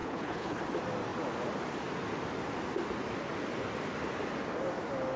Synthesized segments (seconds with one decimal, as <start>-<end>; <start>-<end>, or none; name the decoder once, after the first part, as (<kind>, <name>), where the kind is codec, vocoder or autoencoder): 0.0-0.6 (codec, HILCodec)